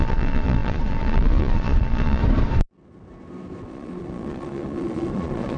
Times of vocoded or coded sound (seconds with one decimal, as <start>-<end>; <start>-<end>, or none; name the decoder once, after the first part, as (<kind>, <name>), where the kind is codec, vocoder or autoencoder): 0.0-2.2 (vocoder, Vocos); 3.7-5.6

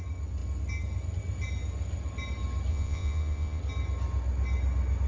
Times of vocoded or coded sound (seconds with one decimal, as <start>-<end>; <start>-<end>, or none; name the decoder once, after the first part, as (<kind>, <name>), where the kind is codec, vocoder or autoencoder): 2.7-3.6 (vocoder, Vocos)

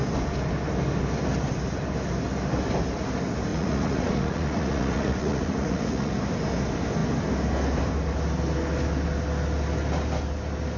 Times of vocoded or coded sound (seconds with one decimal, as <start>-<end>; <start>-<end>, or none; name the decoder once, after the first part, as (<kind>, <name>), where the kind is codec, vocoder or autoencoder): 3.5-6.1 (vocoder, Vocos)